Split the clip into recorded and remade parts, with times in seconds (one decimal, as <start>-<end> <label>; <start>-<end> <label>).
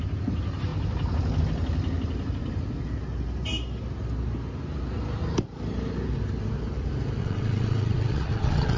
0.0-7.2 recorded; 7.2-8.8 remade